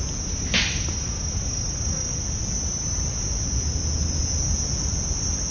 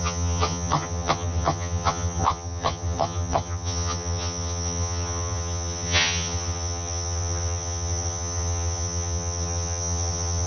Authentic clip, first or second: first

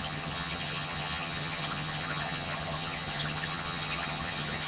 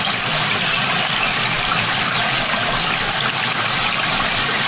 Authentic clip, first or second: second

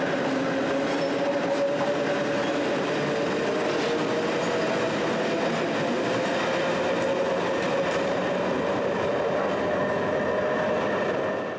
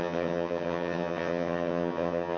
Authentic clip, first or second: first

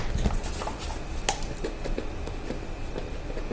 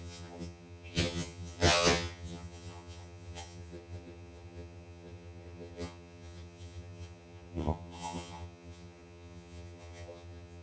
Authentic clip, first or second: first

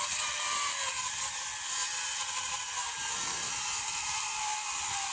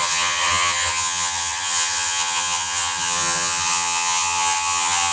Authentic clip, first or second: first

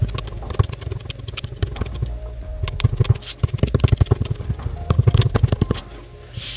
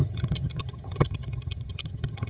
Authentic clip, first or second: first